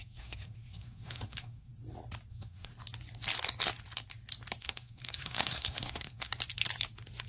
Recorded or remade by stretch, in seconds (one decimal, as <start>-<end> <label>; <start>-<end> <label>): 0.0-1.7 remade; 1.7-2.3 recorded; 2.3-2.7 remade; 2.7-4.6 recorded; 4.6-6.3 remade; 6.3-7.3 recorded